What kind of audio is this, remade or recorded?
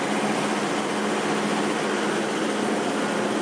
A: recorded